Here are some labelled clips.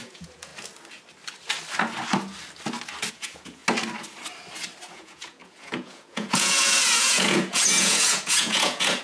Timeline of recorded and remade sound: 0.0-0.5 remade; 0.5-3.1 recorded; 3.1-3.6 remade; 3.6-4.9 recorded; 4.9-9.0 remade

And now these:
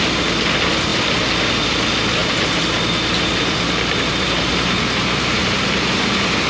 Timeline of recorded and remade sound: 0.0-2.2 recorded; 2.2-6.1 remade; 6.1-6.5 recorded

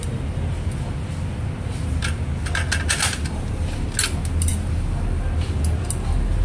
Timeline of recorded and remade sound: 0.0-6.4 recorded